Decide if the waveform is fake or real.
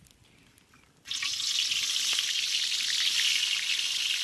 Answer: real